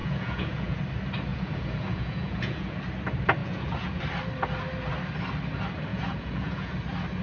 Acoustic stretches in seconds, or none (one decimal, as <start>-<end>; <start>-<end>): 0.8-1.3; 2.8-3.4; 4.0-5.9; 6.8-7.2